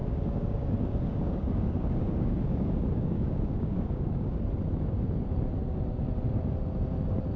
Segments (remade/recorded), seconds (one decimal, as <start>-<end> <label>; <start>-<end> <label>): 0.0-4.4 remade; 4.4-7.4 recorded